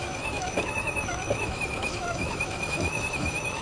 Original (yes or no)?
no